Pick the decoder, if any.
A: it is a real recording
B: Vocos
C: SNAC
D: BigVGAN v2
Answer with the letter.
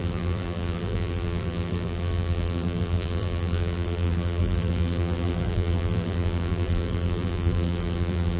D